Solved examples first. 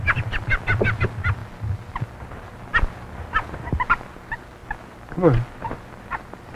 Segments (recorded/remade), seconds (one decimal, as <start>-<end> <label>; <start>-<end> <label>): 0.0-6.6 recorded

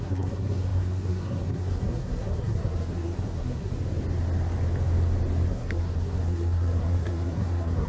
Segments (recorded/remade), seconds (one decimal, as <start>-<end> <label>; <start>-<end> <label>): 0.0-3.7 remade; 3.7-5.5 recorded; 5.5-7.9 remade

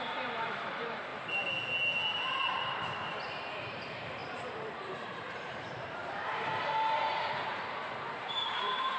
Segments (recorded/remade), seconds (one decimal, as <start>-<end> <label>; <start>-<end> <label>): 0.0-9.0 remade